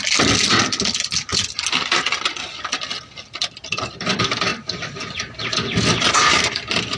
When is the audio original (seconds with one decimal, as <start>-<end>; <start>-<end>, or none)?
0.0-7.0